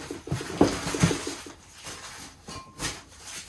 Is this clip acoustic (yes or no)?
yes